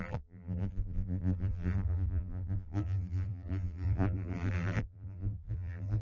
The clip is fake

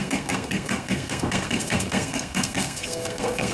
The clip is fake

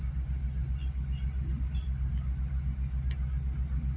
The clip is real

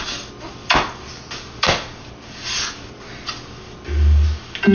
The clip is real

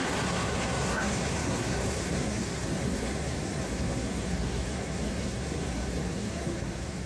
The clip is fake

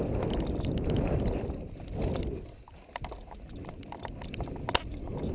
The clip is real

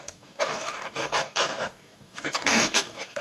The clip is fake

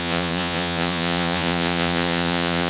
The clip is fake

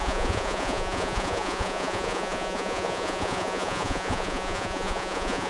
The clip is fake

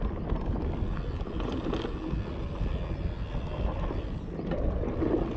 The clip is real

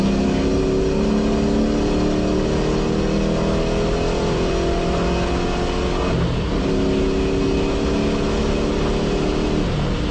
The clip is real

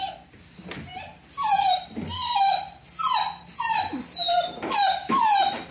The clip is real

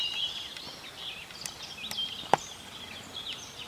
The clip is real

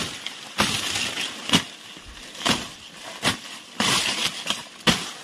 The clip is real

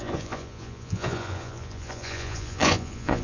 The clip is fake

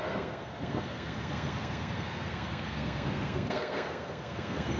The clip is fake